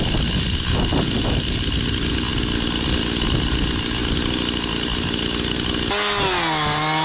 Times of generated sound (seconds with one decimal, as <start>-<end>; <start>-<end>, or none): none

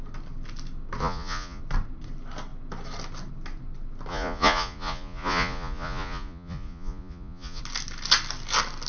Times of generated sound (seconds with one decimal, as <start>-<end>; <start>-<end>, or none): 1.0-1.6; 4.1-7.6

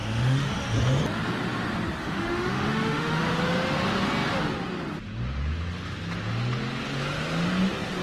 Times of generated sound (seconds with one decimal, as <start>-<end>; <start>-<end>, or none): 0.0-0.5; 2.0-3.4

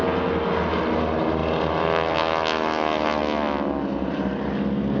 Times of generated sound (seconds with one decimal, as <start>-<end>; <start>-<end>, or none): 3.9-4.5

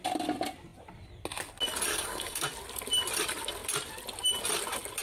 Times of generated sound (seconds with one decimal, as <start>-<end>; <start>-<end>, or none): 1.9-2.5

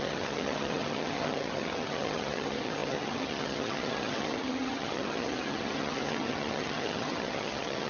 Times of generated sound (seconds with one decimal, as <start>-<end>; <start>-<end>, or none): 0.0-7.9

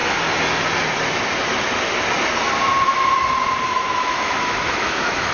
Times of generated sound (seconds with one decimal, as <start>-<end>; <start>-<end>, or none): 3.7-5.3

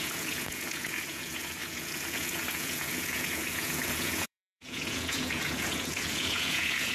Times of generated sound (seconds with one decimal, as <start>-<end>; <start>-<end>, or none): 0.0-6.9